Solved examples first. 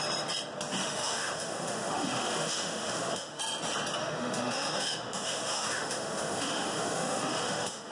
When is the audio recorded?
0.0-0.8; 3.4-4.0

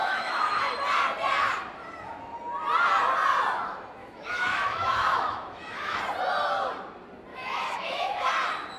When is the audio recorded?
0.6-4.0; 6.0-7.3; 8.3-8.8

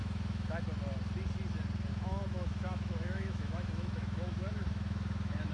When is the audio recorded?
0.6-1.9

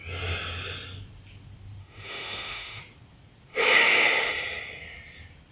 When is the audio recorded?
0.0-1.8; 2.8-3.5; 4.3-5.5